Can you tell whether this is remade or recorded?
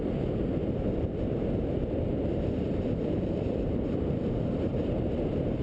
recorded